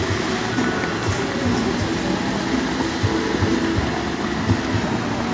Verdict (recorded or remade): recorded